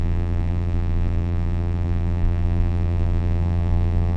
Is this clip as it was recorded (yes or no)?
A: no